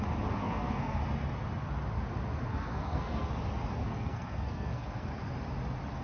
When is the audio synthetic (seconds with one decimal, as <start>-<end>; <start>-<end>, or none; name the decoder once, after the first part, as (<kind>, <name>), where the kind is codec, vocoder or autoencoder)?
0.4-1.0 (codec, SNAC); 2.5-3.3; 3.8-5.1